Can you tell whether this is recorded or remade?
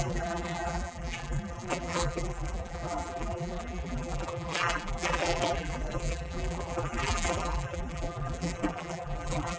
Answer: remade